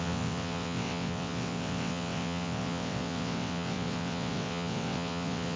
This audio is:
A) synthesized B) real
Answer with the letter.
A